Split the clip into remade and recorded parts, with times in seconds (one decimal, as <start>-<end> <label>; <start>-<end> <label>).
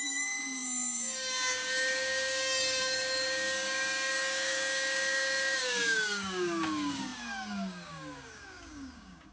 0.0-9.3 remade